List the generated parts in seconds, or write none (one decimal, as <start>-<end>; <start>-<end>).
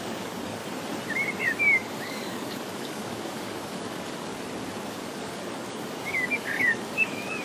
0.0-0.6; 1.6-4.3; 4.9-7.4